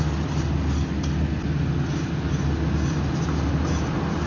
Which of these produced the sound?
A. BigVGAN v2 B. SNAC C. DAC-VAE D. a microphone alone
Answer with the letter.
D